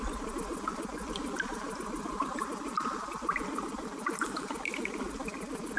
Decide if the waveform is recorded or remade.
recorded